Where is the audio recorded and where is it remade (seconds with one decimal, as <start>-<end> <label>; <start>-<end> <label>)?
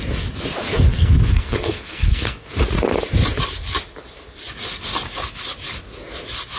0.0-0.7 recorded; 0.7-2.6 remade; 2.6-6.6 recorded